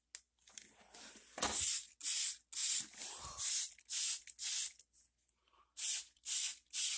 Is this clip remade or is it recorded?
recorded